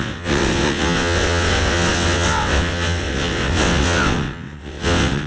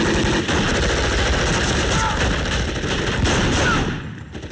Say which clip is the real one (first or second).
second